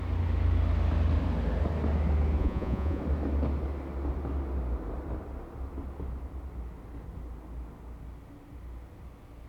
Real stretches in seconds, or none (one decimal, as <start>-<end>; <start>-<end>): 0.0-2.4; 3.0-9.5